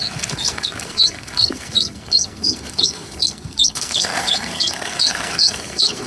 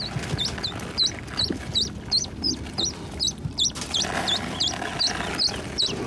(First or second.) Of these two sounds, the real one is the second